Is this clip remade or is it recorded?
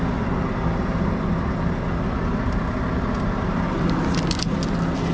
recorded